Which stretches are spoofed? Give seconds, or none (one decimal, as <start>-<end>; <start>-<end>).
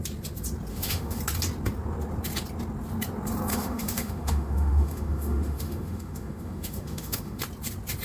0.7-1.2; 3.5-7.4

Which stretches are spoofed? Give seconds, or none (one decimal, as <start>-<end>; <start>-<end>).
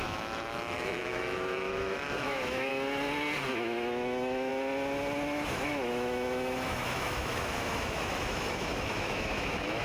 0.0-2.7; 3.5-4.5; 5.5-9.8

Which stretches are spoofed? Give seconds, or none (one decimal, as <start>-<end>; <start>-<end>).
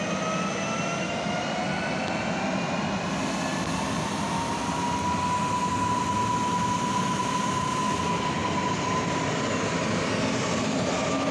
none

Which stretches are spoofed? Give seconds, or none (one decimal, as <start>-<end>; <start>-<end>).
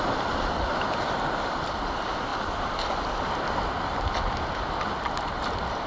none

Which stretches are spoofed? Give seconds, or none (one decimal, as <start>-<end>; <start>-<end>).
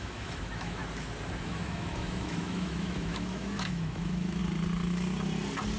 0.0-0.8; 1.4-4.4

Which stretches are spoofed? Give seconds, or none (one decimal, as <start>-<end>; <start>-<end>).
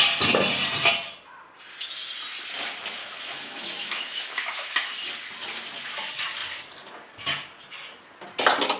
3.0-4.7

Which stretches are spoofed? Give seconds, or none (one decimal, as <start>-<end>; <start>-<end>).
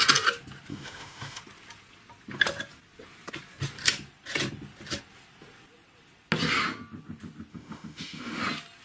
0.7-1.4; 7.5-8.4